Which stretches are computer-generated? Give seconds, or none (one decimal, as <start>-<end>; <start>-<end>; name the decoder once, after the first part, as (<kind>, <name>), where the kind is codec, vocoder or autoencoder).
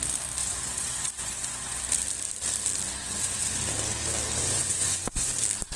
0.4-1.8 (vocoder, Vocos); 3.0-3.6; 4.4-5.3